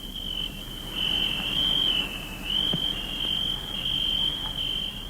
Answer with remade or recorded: recorded